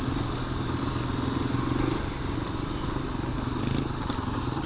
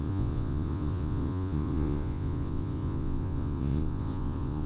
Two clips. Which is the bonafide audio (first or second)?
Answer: first